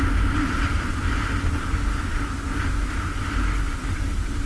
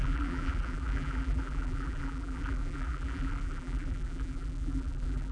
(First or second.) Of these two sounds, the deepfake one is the second